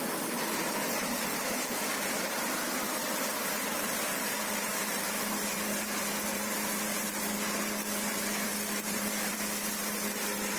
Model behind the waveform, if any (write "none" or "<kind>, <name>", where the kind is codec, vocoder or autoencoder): vocoder, BigVGAN v2